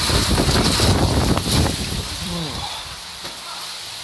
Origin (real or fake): fake